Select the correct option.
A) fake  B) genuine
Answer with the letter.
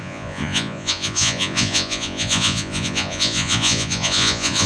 A